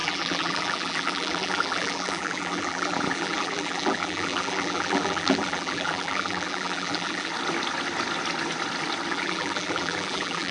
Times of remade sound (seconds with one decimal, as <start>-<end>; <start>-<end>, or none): 0.0-7.3; 9.1-10.5